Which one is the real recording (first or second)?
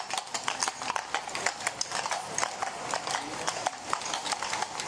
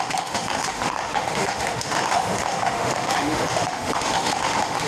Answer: first